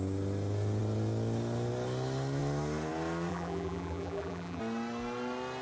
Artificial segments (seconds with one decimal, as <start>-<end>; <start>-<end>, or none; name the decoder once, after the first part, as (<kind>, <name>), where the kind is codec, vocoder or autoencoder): 3.3-4.6 (vocoder, BigVGAN v2)